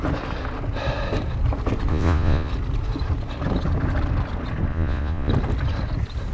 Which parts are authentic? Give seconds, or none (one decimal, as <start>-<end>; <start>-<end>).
0.0-1.9; 2.5-4.7; 5.3-6.3